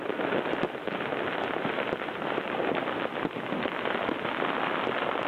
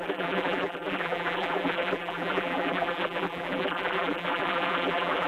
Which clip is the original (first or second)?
first